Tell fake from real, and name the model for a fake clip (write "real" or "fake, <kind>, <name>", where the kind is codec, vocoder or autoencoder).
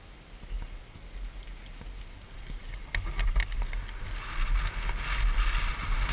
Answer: real